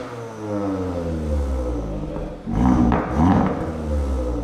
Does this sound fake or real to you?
real